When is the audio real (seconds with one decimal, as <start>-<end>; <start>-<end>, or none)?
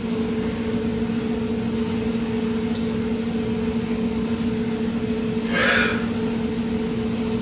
0.0-7.4